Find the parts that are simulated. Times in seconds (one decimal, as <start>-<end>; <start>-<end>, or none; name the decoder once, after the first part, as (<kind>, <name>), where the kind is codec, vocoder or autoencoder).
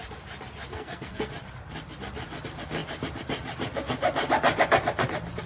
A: 0.7-1.3 (codec, SNAC)